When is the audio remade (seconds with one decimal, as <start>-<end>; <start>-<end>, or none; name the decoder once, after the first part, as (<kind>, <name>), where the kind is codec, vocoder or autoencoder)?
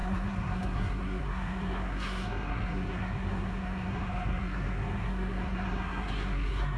0.0-6.8 (codec, SNAC)